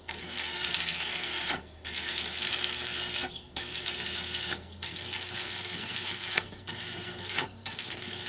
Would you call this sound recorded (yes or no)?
no